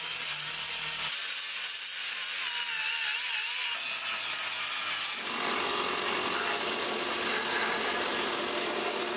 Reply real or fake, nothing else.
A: real